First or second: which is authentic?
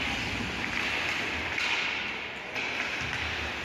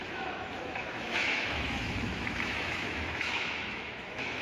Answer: first